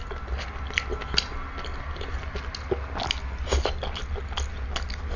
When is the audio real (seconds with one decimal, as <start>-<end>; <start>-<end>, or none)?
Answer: 0.0-5.2